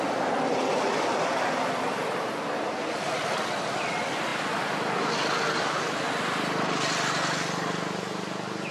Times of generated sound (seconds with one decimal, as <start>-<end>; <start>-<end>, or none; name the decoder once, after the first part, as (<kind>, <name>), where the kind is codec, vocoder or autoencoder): none